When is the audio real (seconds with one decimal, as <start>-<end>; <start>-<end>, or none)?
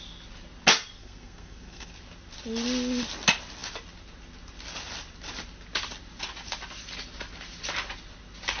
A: 0.0-1.0; 1.9-8.6